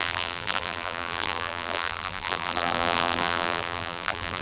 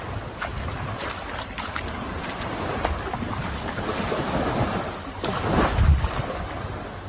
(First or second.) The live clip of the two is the second